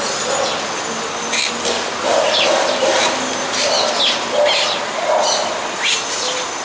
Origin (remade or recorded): recorded